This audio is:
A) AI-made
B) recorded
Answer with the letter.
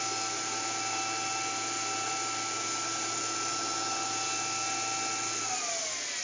B